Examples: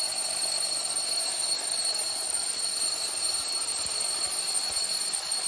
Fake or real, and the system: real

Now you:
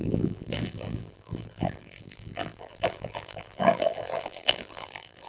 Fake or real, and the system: fake, vocoder, BigVGAN v2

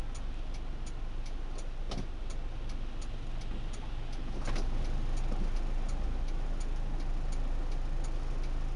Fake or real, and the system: real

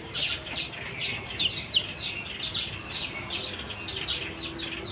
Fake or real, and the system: real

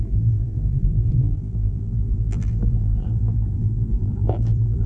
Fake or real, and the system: fake, vocoder, BigVGAN v2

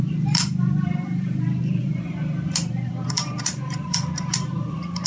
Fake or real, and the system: fake, vocoder, BigVGAN v2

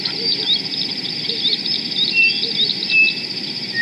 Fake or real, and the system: real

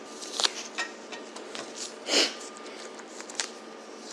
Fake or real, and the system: real